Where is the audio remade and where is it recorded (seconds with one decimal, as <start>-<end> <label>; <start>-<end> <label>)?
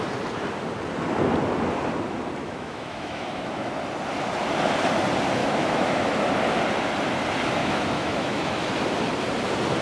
0.0-2.4 recorded; 2.4-3.7 remade; 3.7-5.4 recorded; 5.4-6.3 remade; 6.3-7.6 recorded; 7.6-8.7 remade; 8.7-9.8 recorded